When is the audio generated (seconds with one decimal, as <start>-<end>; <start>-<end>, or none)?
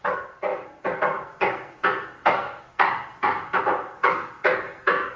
0.0-5.2